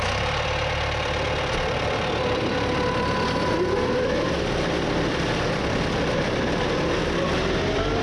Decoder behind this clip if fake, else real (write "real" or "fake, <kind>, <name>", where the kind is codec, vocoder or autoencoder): fake, vocoder, BigVGAN v2